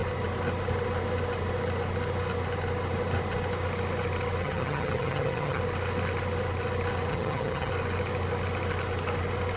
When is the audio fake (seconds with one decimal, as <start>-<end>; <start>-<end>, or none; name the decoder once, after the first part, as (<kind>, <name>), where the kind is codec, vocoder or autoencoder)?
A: 4.4-5.6 (vocoder, HiFi-GAN); 7.1-7.7